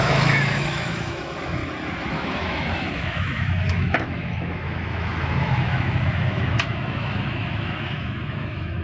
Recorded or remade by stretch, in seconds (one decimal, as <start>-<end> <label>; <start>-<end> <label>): 0.0-1.6 remade; 1.6-2.1 recorded; 2.1-8.8 remade